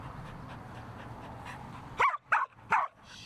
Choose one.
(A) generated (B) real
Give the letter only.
B